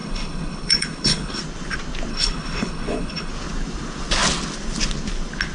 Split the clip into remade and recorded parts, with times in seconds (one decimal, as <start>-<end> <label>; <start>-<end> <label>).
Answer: 0.0-1.4 remade; 1.4-2.1 recorded; 2.1-3.3 remade; 3.3-5.5 recorded